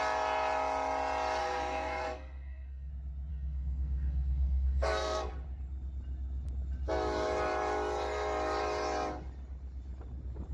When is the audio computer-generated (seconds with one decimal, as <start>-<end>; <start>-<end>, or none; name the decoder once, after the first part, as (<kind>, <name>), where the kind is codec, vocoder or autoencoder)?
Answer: 1.4-2.9 (codec, SNAC); 3.3-5.3